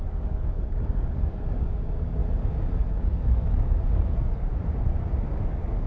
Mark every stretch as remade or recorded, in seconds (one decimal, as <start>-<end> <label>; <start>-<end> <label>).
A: 0.0-2.2 remade; 2.2-2.8 recorded; 2.8-4.5 remade; 4.5-5.5 recorded; 5.5-5.9 remade

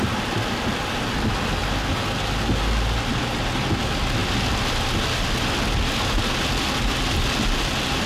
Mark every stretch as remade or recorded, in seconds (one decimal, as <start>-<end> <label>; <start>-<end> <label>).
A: 0.0-8.1 recorded

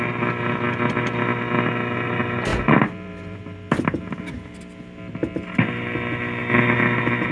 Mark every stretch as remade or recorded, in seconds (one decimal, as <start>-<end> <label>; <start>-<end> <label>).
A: 0.0-2.5 recorded; 2.5-3.4 remade; 3.4-7.3 recorded

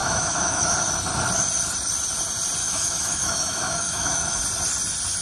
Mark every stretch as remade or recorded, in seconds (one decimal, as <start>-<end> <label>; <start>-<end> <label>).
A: 0.0-0.7 remade; 0.7-2.6 recorded; 2.6-4.4 remade; 4.4-5.2 recorded